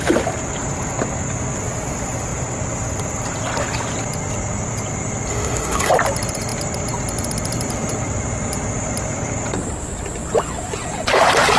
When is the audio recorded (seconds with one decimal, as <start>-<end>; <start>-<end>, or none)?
0.0-5.3; 5.9-11.6